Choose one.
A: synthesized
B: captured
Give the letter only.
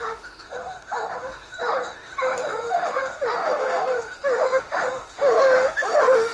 A